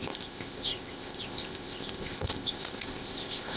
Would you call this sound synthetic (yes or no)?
yes